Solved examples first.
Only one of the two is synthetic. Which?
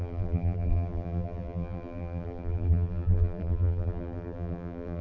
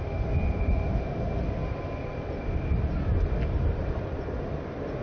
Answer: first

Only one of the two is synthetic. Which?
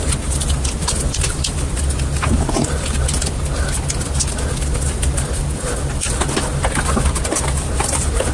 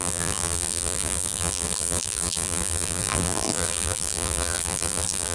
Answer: second